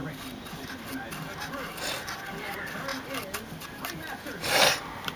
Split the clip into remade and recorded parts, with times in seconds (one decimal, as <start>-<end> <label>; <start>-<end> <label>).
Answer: 0.0-5.2 recorded